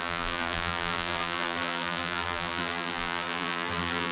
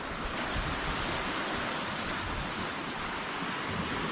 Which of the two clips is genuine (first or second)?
second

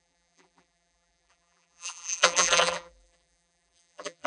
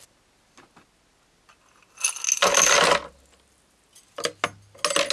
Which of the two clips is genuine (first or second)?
second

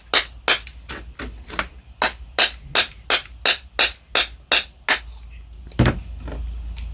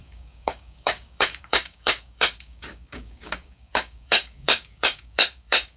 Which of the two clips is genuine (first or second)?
first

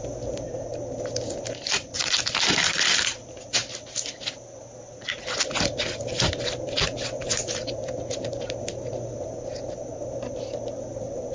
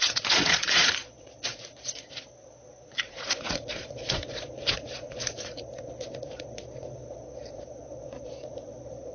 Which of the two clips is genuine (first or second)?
first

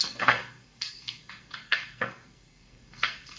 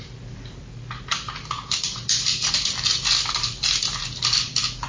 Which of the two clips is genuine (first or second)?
second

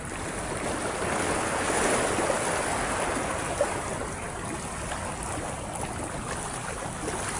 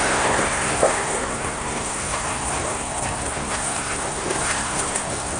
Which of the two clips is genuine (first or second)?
first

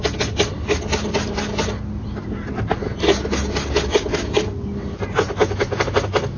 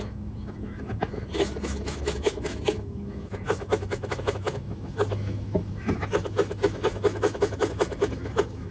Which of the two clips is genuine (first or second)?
first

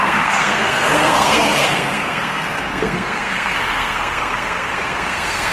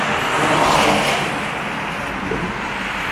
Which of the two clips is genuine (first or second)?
second